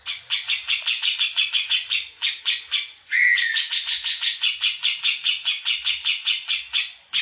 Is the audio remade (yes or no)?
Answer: yes